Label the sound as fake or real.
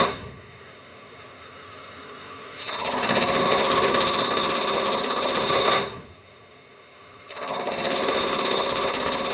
fake